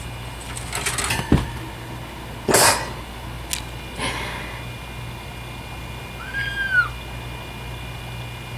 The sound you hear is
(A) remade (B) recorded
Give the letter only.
B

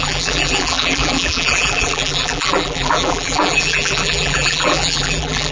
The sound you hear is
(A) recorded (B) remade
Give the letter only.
B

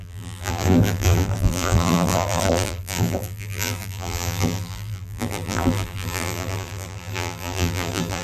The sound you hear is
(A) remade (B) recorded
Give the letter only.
A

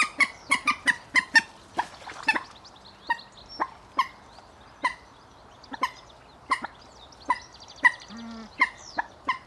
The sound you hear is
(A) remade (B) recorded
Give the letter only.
B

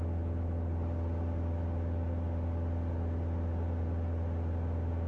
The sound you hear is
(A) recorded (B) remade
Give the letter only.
A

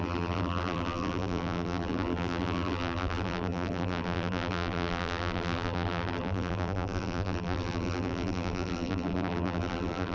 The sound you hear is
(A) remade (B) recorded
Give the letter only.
A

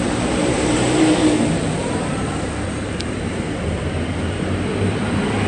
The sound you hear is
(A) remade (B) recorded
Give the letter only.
A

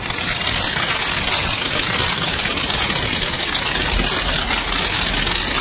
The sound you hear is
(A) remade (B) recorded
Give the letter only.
B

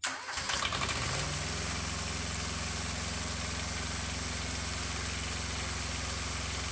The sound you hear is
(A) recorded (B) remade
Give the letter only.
A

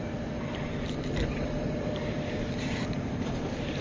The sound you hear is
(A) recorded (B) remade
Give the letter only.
B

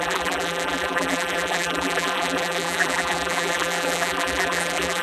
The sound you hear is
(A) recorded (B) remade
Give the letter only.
B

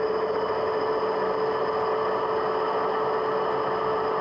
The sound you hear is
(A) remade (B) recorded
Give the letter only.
B